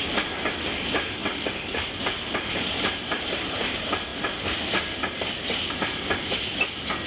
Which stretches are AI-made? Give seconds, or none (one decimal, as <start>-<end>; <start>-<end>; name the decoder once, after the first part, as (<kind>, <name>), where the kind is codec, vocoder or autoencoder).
none

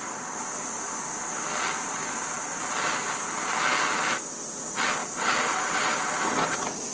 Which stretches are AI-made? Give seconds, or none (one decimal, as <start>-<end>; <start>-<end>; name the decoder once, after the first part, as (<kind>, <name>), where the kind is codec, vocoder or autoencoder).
none

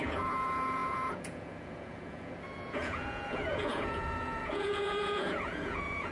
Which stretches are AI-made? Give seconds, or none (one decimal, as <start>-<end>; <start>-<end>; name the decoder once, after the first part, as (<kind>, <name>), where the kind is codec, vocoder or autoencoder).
0.0-6.1 (vocoder, Vocos)

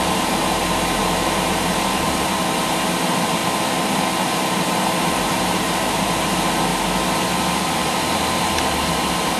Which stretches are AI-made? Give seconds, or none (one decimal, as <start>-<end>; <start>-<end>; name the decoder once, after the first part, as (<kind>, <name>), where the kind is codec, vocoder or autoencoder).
0.0-3.4 (vocoder, BigVGAN v2); 4.2-6.7; 7.9-9.4

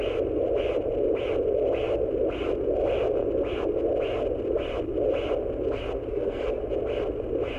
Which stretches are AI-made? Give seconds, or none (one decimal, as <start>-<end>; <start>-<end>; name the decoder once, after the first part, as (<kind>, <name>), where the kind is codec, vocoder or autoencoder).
6.1-6.6 (codec, SNAC)

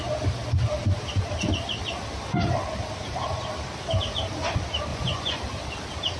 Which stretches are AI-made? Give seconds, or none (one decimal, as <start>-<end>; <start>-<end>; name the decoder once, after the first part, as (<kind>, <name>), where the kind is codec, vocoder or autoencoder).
4.9-5.4 (vocoder, Vocos)

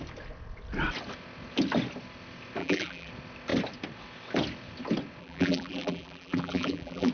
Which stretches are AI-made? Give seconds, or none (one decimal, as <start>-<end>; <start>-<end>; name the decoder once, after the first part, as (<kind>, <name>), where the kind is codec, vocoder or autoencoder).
2.6-3.1 (vocoder, BigVGAN v2); 5.2-7.1